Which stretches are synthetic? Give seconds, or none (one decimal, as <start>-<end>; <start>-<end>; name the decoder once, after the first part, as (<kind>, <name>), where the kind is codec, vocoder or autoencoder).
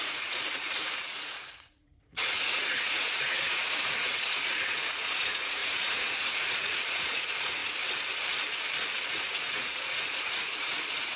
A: 0.0-7.6 (vocoder, Vocos); 9.1-11.2